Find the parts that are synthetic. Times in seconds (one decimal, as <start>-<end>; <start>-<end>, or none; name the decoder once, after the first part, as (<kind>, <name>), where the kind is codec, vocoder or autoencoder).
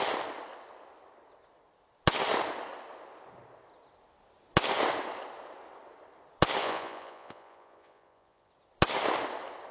6.6-8.5 (vocoder, Vocos)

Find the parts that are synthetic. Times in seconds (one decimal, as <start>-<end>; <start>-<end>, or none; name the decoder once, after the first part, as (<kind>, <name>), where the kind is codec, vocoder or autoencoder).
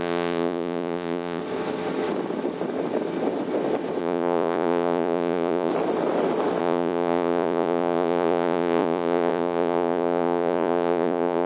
0.0-1.4 (vocoder, Vocos); 4.0-5.7; 6.6-11.5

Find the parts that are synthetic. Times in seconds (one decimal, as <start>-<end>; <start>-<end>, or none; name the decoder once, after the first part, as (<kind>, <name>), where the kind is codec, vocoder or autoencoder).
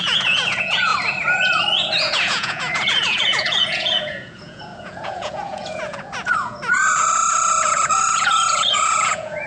0.0-0.9 (vocoder, Vocos); 2.0-9.5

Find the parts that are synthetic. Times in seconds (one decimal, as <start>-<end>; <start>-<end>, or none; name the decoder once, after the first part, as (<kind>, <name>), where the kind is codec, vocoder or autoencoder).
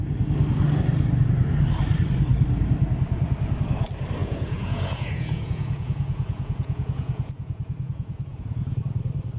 4.2-8.8 (vocoder, Vocos)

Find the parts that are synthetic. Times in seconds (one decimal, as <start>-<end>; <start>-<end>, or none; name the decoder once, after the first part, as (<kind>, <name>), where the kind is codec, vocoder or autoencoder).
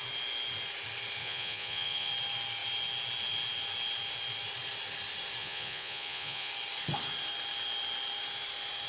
1.2-2.1 (vocoder, Vocos); 5.4-6.5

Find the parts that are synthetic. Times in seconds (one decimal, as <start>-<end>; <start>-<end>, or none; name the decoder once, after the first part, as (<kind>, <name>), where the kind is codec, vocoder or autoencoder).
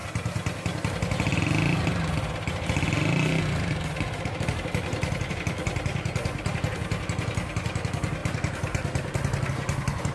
none